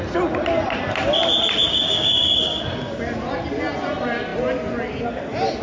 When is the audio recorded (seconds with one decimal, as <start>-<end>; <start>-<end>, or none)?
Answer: 0.0-1.7; 2.6-5.6